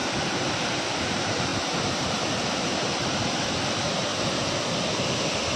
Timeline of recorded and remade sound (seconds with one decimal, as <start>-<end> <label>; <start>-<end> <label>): 0.0-0.8 recorded; 0.8-4.1 remade; 4.1-5.6 recorded